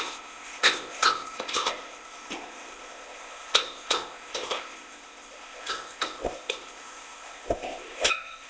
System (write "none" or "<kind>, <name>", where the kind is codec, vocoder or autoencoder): codec, ZipCodec